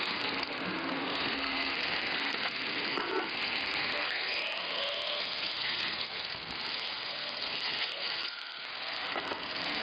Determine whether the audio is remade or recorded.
remade